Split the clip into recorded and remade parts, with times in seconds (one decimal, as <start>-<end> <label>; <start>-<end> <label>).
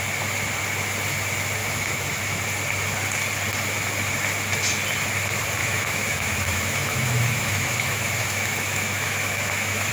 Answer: 0.0-1.6 recorded; 1.6-2.4 remade; 2.4-5.6 recorded; 5.6-9.9 remade